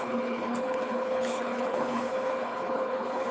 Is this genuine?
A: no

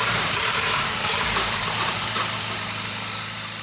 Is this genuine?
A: no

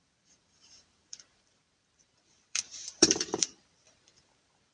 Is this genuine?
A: no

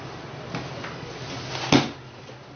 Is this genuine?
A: yes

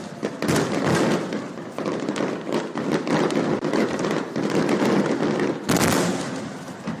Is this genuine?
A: yes